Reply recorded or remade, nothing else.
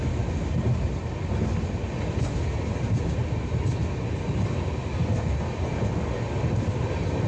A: recorded